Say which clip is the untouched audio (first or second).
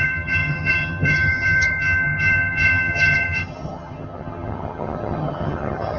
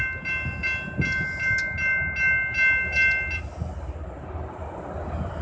second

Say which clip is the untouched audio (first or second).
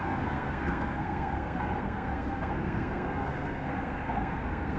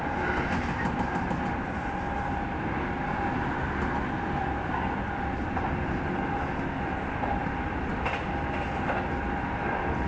second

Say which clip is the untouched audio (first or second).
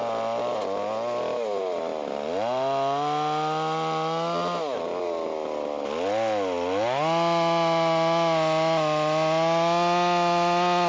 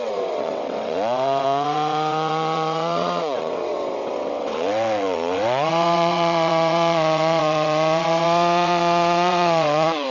first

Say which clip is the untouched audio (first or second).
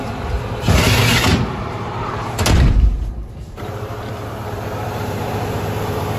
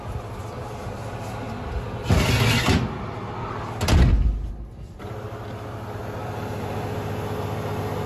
second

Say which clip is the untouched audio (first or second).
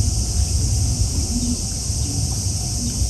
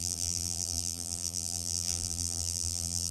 first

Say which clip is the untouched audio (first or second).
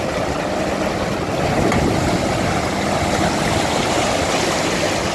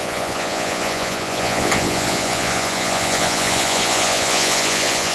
first